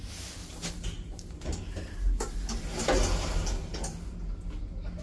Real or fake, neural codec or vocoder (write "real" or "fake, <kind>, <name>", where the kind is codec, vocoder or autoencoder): real